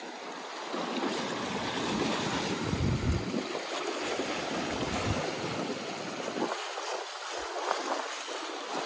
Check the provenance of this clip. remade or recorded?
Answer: recorded